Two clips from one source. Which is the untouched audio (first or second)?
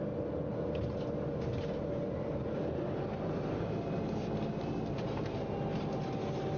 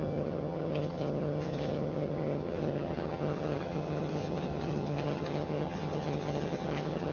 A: first